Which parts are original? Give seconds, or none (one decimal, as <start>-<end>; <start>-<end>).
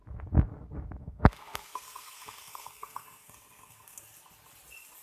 0.0-1.0; 4.0-5.0